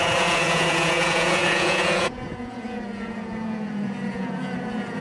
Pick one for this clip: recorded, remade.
remade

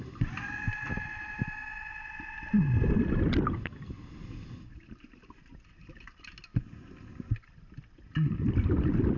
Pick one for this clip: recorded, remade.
recorded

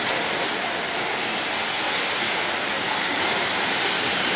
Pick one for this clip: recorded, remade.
recorded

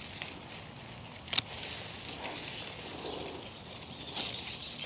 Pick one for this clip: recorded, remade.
recorded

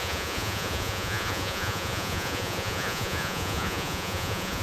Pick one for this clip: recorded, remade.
remade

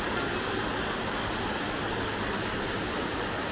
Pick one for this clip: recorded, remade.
recorded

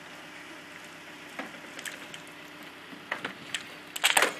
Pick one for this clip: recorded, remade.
recorded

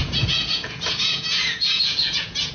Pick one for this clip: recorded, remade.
remade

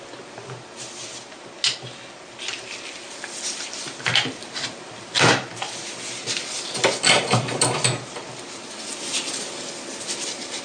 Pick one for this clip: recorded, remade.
recorded